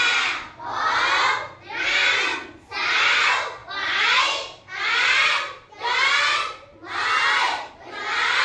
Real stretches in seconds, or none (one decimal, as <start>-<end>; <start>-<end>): 0.0-8.4